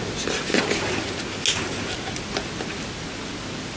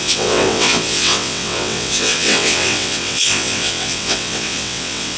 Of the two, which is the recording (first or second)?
first